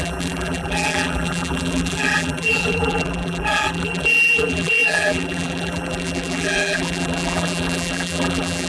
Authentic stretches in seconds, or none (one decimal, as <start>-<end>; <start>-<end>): none